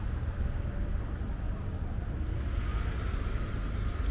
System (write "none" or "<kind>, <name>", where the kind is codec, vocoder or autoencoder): none